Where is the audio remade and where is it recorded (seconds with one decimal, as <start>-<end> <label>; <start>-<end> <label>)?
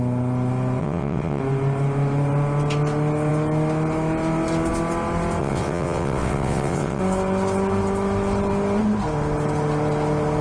0.0-0.8 recorded; 0.8-1.4 remade; 1.4-5.4 recorded; 5.4-7.0 remade; 7.0-10.4 recorded